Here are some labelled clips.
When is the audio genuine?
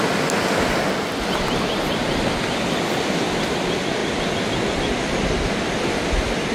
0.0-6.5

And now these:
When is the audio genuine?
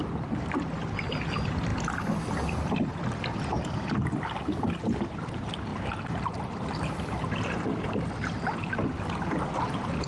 0.0-10.1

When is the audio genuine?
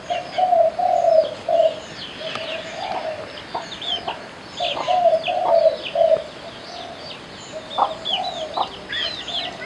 0.0-9.7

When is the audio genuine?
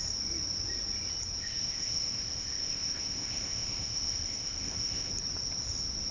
0.0-1.4; 5.1-6.1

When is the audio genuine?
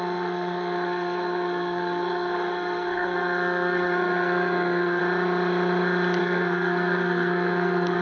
5.0-6.2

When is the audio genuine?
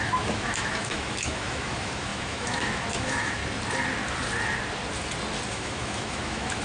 3.4-5.5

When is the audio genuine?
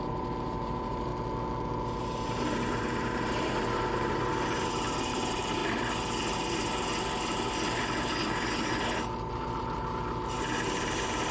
1.1-2.0; 5.6-9.3